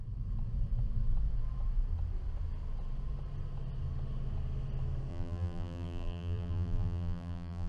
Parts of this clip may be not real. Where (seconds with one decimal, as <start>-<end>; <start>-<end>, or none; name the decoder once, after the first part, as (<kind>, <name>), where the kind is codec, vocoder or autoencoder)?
5.1-7.7 (vocoder, BigVGAN v2)